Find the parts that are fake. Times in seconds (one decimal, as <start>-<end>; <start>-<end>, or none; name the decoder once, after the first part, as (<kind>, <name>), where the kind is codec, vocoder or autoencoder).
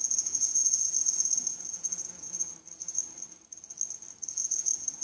0.0-2.5 (vocoder, Vocos); 4.3-5.0